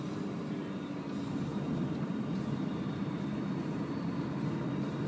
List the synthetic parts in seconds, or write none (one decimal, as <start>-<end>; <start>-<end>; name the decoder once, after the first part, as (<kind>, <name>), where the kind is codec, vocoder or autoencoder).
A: 1.5-3.9 (vocoder, BigVGAN v2)